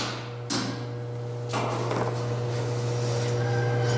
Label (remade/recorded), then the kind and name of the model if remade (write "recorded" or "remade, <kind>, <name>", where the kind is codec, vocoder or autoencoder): recorded